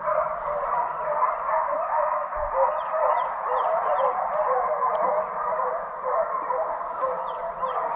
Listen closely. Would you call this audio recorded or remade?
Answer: recorded